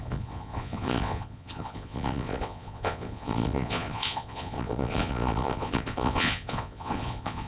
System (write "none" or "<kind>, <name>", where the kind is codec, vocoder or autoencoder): vocoder, Vocos